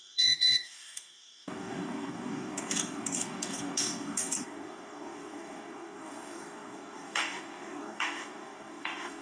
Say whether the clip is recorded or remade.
remade